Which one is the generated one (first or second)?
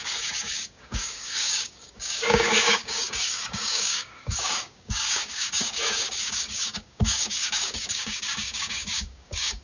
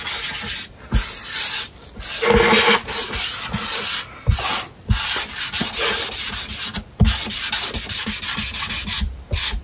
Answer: first